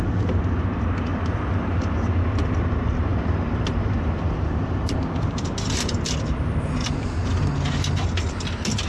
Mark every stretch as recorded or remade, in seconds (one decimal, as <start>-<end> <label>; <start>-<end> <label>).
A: 0.0-1.1 recorded; 1.1-2.1 remade; 2.1-3.1 recorded; 3.1-7.4 remade; 7.4-8.9 recorded